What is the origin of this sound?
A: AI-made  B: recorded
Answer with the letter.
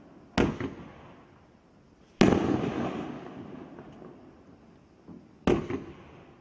B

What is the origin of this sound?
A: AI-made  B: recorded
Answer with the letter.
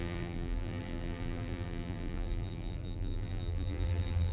A